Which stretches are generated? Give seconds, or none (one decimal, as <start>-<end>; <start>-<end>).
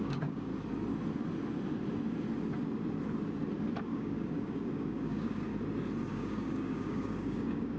0.0-0.5; 3.8-5.5; 6.1-7.8